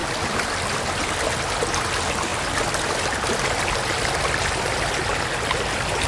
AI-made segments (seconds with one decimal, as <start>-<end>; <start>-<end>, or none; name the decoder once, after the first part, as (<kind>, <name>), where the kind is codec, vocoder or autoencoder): none

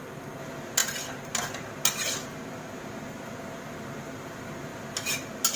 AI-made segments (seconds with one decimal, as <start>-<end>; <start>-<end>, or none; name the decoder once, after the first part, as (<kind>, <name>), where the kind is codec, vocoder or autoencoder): none

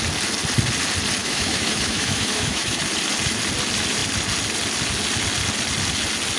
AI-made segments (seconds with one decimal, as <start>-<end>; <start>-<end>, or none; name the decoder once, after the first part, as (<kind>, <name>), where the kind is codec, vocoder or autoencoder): 1.2-2.8 (autoencoder, DAC-VAE)